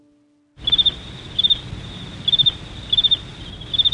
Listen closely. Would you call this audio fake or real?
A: real